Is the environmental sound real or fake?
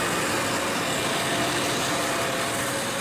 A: real